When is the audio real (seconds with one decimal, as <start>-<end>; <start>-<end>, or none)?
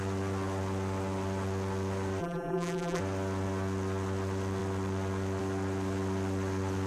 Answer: 0.0-2.2; 3.0-6.9